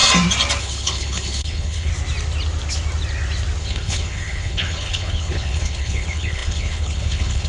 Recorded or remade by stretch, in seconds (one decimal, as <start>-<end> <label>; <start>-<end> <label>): 0.0-0.6 recorded; 0.6-1.9 remade; 1.9-3.6 recorded; 3.6-7.5 remade